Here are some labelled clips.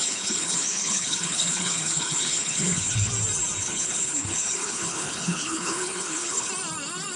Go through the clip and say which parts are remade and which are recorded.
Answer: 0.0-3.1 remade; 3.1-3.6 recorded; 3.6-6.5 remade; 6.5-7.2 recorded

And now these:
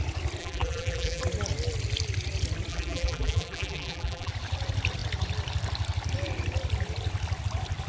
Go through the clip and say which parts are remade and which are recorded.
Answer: 0.0-0.4 recorded; 0.4-1.2 remade; 1.2-2.7 recorded; 2.7-4.3 remade; 4.3-7.9 recorded

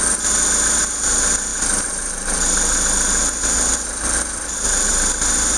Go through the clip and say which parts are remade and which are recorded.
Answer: 0.0-1.5 recorded; 1.5-4.9 remade; 4.9-5.6 recorded

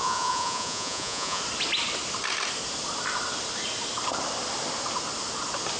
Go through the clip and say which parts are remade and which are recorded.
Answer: 0.0-1.4 remade; 1.4-5.8 recorded

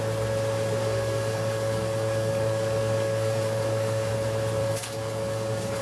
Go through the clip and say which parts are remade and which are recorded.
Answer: 0.0-0.8 recorded; 0.8-4.1 remade; 4.1-4.6 recorded; 4.6-5.8 remade